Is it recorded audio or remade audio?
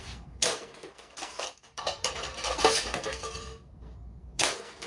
remade